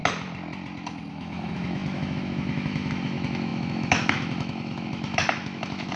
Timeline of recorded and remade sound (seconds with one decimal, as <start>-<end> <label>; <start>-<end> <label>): 0.0-1.1 recorded; 1.1-6.0 remade